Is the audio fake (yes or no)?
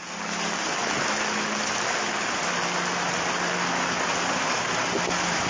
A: no